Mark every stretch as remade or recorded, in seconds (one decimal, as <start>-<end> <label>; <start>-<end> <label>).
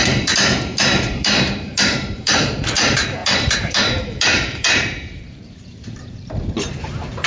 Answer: 0.0-7.3 remade